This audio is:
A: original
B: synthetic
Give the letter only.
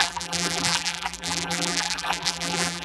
B